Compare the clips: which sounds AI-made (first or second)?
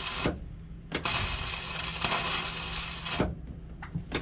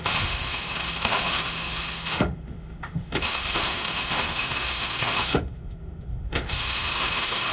second